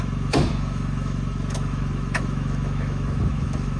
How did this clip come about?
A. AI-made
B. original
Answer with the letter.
A